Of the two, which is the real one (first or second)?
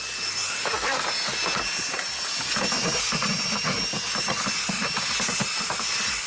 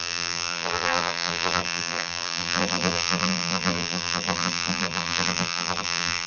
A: first